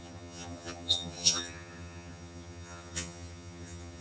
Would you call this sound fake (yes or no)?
yes